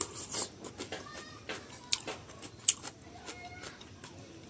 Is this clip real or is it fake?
real